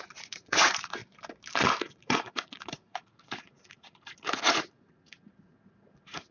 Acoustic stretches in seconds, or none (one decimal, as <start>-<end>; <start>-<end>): 1.0-1.8